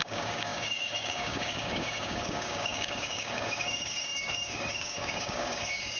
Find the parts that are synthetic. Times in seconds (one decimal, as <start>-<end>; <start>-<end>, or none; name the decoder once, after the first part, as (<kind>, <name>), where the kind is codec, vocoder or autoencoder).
0.0-6.0 (codec, DAC)

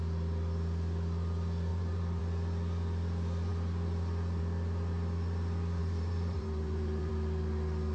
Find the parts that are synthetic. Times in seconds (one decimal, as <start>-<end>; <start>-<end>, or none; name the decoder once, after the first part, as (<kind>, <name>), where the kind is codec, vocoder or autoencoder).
1.7-2.2 (vocoder, BigVGAN v2); 5.8-7.1

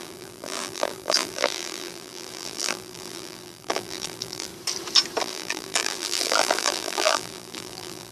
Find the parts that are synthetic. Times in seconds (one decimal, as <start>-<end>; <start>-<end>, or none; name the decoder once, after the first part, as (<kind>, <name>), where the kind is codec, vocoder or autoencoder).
0.0-4.5 (vocoder, BigVGAN v2); 5.2-8.1

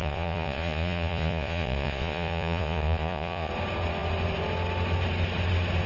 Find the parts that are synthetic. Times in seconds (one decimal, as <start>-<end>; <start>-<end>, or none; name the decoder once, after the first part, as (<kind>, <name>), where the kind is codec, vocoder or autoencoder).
0.0-3.5 (vocoder, Vocos)

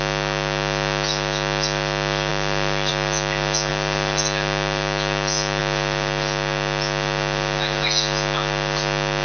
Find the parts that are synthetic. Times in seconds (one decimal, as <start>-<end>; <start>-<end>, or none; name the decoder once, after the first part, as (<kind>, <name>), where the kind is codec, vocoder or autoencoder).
none

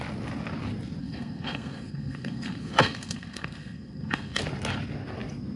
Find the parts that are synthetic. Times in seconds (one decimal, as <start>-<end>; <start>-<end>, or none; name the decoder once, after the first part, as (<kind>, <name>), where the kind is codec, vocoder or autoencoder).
1.0-4.4 (codec, SNAC)

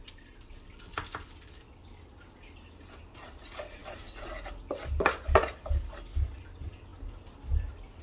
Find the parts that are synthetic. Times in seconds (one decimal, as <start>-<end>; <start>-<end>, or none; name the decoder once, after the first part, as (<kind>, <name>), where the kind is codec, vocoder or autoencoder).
none